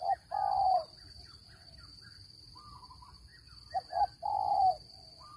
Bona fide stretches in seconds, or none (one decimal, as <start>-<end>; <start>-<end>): 0.0-0.4; 1.0-3.3

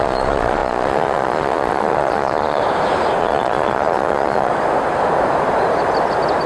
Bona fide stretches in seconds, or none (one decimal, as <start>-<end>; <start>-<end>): 2.6-3.2; 4.5-6.5

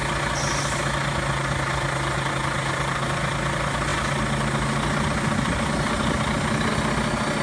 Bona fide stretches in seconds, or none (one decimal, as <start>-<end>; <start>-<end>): 0.0-7.4

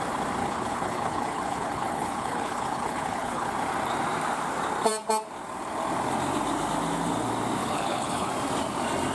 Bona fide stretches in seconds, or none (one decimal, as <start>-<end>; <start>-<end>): 0.0-0.4; 3.5-7.6; 8.3-9.1

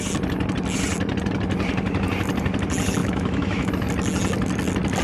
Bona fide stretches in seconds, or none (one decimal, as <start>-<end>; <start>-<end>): 0.0-3.0; 3.7-5.0

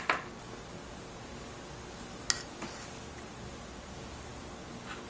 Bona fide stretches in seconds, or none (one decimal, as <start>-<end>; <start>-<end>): 0.0-5.1